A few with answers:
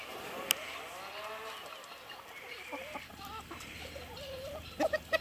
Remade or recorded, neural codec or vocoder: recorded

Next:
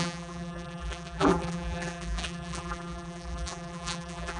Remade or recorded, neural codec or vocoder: remade, vocoder, BigVGAN v2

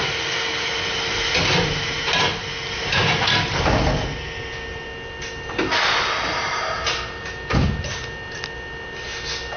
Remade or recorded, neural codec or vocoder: recorded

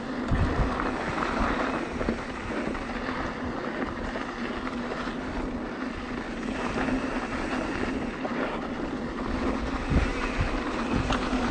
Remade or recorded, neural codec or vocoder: recorded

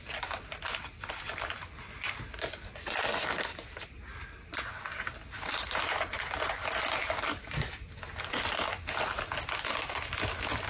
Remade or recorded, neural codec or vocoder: recorded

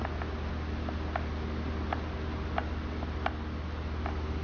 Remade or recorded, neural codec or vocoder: recorded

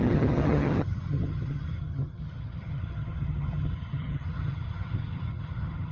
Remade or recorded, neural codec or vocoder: remade, vocoder, HiFi-GAN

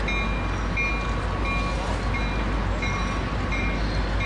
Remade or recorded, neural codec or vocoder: recorded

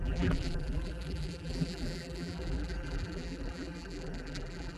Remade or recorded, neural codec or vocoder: remade, vocoder, BigVGAN v2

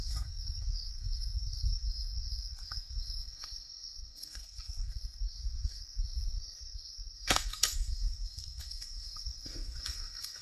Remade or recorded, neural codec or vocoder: remade, codec, SNAC